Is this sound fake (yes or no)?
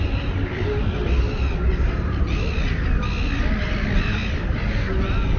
no